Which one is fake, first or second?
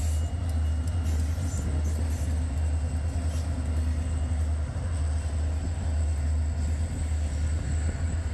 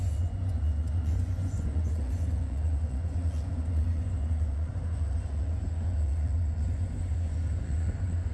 second